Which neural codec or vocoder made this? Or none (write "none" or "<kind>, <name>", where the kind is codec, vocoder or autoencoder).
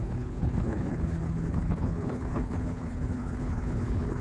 codec, HILCodec